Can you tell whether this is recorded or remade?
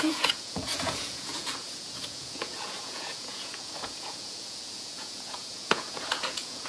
remade